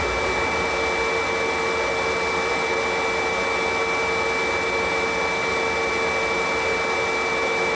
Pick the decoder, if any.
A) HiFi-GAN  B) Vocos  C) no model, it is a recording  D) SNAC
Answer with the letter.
C